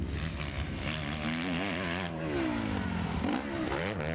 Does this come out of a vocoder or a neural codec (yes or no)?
no